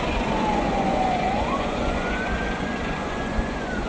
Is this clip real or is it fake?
fake